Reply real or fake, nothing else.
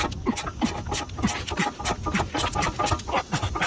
real